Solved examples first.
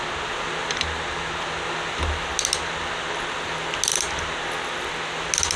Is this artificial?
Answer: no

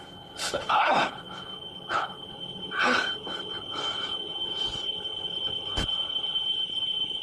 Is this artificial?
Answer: yes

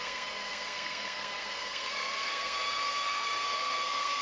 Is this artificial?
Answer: yes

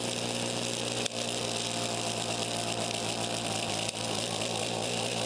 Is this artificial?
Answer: no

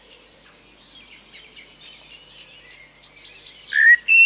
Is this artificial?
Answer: no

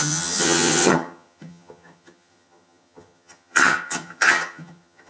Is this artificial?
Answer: yes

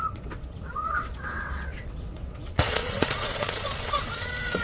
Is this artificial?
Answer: yes